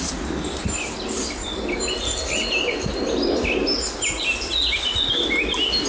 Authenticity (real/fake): real